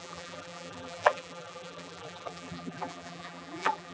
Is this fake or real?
fake